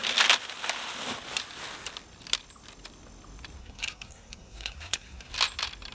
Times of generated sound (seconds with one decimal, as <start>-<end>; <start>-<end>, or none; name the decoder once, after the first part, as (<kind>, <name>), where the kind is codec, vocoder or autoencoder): 3.6-5.3 (codec, SNAC)